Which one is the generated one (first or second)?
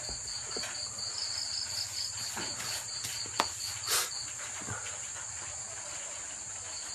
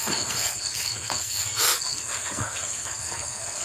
second